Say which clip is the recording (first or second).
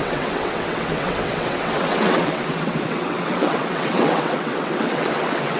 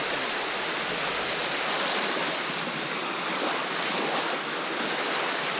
second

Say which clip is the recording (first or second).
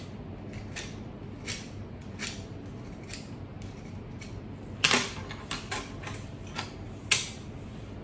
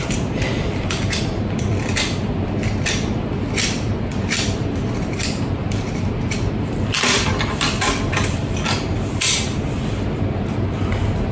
first